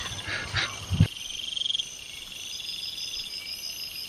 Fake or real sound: real